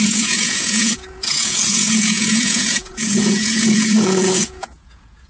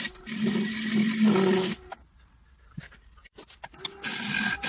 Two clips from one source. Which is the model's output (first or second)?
first